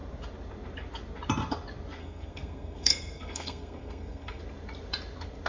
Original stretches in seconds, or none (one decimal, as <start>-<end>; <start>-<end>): 0.0-2.0; 4.4-5.5

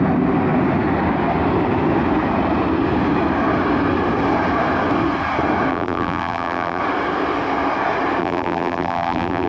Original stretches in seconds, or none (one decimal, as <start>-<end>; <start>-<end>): 0.0-5.7; 6.8-8.2

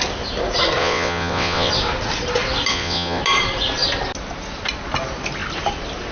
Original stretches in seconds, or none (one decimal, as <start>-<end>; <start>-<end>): 0.0-0.8; 1.7-2.7; 3.2-6.1

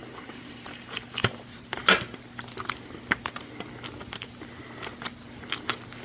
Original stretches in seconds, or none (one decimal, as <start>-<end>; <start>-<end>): 1.4-6.0

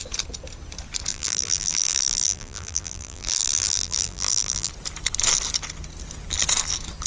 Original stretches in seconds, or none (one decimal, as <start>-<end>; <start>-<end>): 0.0-1.1; 4.7-7.1